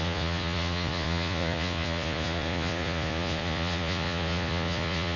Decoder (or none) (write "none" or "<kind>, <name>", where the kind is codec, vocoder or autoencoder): vocoder, Vocos